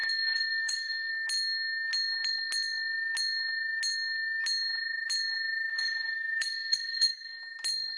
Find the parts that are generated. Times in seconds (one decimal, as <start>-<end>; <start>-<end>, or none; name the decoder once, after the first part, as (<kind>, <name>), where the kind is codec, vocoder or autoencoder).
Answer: 0.0-1.1 (codec, SNAC); 5.7-7.4